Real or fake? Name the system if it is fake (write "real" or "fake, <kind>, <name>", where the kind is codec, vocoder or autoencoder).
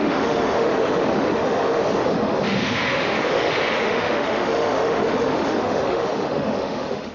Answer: fake, autoencoder, DAC-VAE